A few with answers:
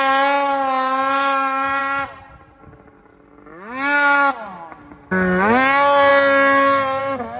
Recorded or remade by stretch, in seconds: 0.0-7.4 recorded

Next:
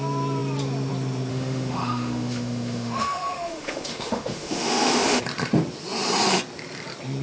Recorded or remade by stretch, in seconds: 0.0-1.3 recorded; 1.3-5.2 remade; 5.2-7.2 recorded

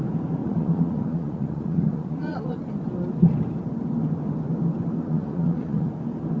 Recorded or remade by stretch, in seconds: 0.0-0.4 recorded; 0.4-2.7 remade; 2.7-5.0 recorded; 5.0-5.9 remade; 5.9-6.4 recorded

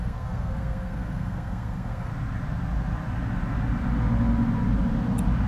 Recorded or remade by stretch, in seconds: 0.0-2.1 remade; 2.1-5.5 recorded

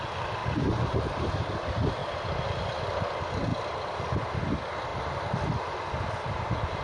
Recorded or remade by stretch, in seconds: 0.0-0.4 recorded; 0.4-1.3 remade; 1.3-3.5 recorded; 3.5-4.0 remade; 4.0-6.8 recorded

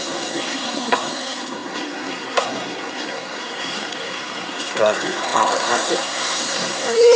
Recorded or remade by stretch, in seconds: 0.0-7.2 remade